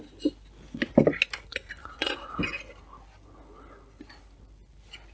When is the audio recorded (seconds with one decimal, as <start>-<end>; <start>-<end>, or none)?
0.0-1.8; 2.4-5.1